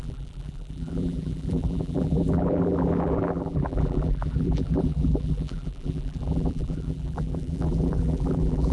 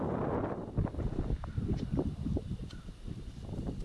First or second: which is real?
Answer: second